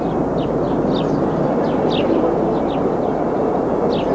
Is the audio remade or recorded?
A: recorded